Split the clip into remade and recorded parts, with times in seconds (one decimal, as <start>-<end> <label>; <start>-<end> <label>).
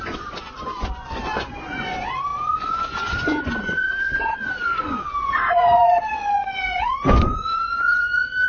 0.0-8.5 remade